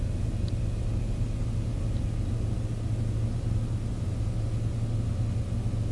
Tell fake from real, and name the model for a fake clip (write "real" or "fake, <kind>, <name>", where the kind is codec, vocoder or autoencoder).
real